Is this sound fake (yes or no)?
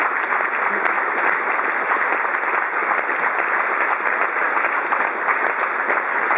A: no